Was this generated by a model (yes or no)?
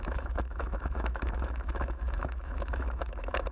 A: yes